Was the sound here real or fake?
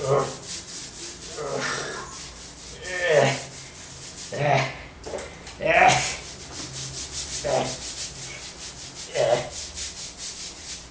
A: real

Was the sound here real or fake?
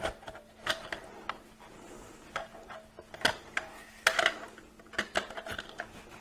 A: real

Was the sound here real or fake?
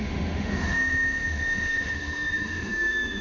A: fake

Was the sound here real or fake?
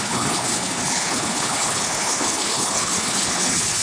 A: fake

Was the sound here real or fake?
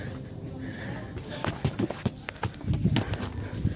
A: real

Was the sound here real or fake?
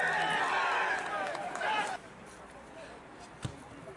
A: real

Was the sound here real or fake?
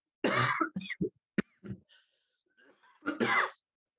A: real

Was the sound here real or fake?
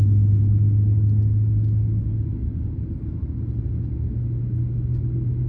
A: real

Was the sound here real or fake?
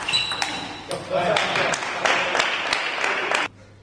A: real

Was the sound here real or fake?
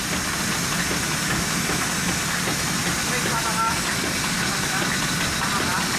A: real